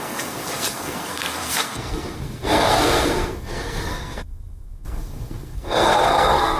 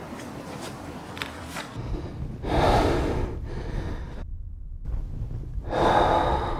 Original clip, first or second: second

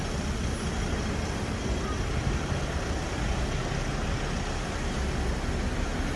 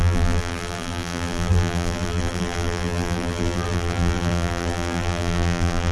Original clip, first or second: first